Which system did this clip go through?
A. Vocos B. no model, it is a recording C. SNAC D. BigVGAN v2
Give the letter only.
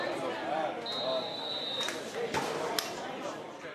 D